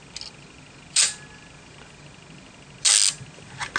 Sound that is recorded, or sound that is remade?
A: recorded